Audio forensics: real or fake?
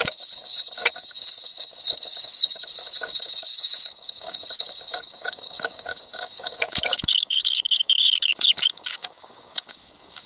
fake